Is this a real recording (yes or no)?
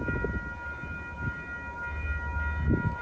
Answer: yes